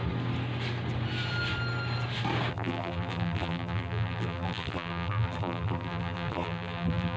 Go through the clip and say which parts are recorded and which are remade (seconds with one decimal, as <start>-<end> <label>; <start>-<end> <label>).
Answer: 0.0-2.5 recorded; 2.5-7.2 remade